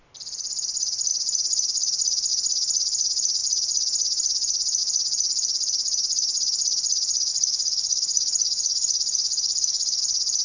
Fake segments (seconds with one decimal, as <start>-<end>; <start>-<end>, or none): 7.3-10.0